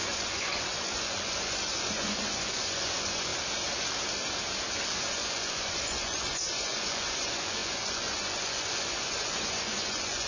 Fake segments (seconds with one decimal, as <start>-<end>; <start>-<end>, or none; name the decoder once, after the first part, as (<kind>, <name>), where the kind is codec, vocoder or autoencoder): 0.0-3.3 (vocoder, Vocos); 5.1-10.3